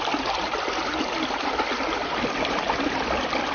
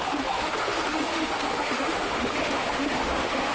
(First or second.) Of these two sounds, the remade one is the second